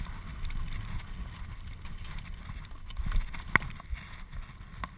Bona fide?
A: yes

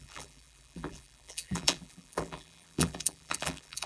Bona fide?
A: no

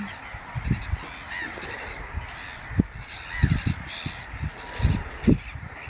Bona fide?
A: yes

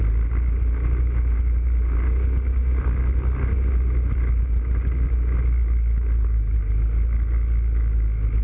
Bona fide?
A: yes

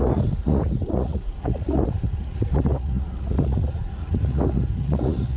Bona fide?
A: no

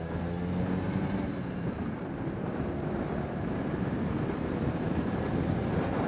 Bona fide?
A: no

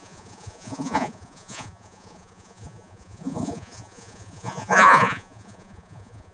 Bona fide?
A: no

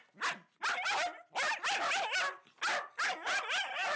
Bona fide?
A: yes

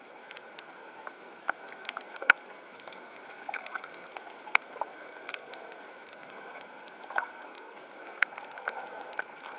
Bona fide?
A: no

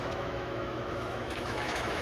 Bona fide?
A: no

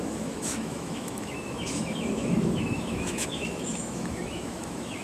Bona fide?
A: no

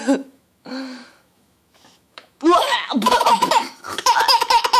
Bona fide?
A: no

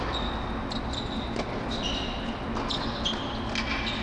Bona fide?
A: yes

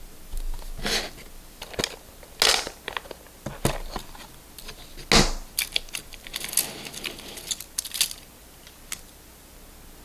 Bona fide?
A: yes